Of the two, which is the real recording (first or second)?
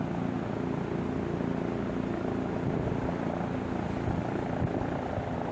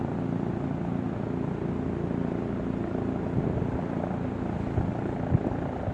first